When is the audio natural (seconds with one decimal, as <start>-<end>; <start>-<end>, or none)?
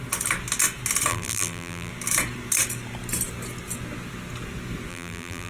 0.0-1.1; 1.9-4.9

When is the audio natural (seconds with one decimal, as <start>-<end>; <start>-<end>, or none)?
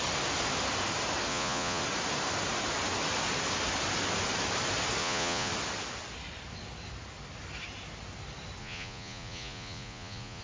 0.0-1.3; 1.8-5.0; 5.5-8.6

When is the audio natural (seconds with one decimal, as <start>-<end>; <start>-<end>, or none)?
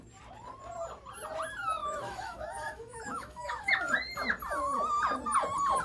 0.0-1.8; 3.7-5.8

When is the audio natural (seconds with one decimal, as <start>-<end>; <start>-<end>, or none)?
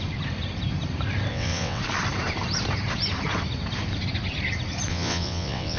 0.0-1.3; 1.8-4.9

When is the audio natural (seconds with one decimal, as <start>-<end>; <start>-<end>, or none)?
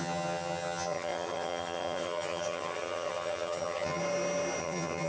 4.0-4.6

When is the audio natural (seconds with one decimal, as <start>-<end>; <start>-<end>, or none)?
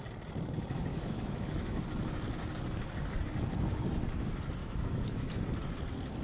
0.0-0.9; 1.8-4.6; 5.3-6.2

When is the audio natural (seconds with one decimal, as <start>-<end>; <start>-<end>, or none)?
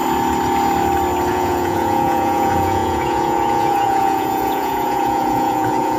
0.0-1.3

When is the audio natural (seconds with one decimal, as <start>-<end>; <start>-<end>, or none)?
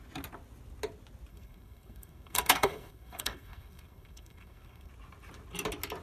0.0-1.3; 4.9-6.0